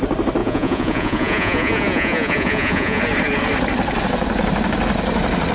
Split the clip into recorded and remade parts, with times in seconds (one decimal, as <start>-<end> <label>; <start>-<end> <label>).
0.0-0.4 recorded; 0.4-3.0 remade; 3.0-5.5 recorded